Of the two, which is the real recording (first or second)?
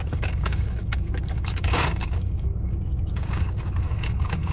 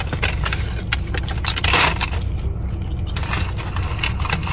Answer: second